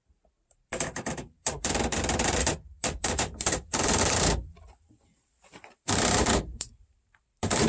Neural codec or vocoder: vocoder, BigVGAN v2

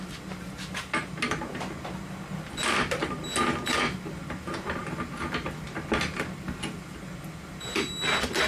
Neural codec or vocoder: none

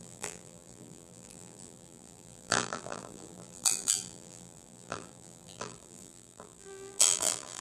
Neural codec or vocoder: vocoder, BigVGAN v2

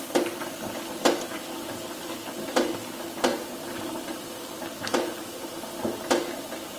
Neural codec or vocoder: none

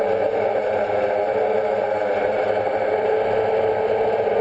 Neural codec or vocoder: none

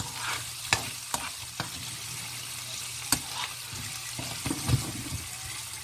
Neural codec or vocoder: none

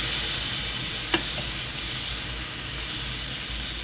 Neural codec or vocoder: none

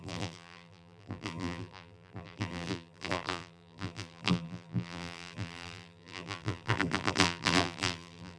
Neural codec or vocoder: vocoder, BigVGAN v2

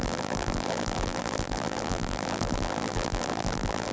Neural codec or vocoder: vocoder, BigVGAN v2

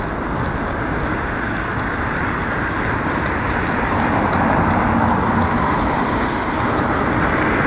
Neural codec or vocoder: none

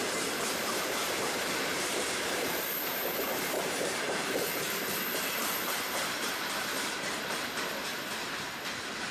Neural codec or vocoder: vocoder, BigVGAN v2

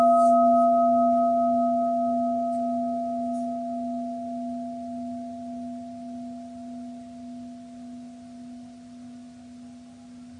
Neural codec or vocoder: none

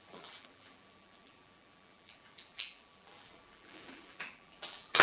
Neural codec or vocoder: vocoder, BigVGAN v2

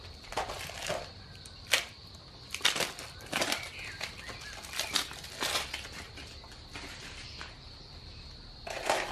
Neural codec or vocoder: vocoder, BigVGAN v2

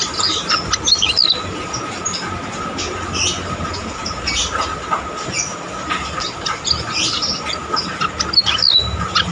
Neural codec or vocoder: none